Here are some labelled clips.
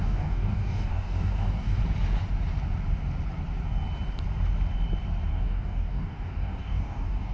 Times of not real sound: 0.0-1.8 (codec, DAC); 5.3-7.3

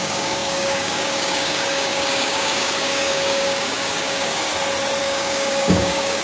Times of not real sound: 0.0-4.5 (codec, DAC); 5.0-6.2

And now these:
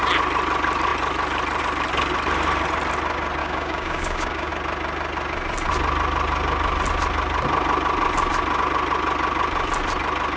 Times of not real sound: 3.4-4.5 (codec, DAC)

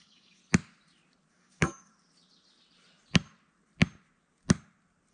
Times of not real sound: 0.0-0.4 (codec, DAC); 1.3-1.9

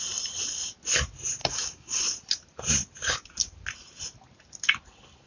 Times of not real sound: 1.4-2.0 (codec, DAC)

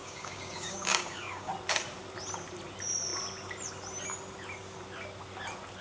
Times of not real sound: 0.0-1.5 (codec, DAC)

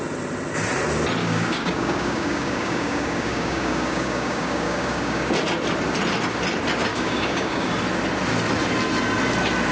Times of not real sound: 1.2-5.3 (codec, DAC); 6.9-7.7

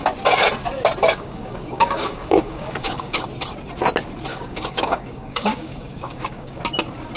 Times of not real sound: 1.0-3.2 (codec, DAC); 4.3-6.6